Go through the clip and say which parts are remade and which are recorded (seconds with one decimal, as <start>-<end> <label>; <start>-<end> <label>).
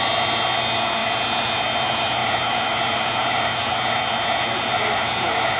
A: 0.0-5.6 recorded